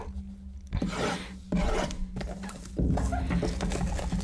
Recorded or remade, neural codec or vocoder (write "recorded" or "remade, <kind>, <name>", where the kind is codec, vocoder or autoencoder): recorded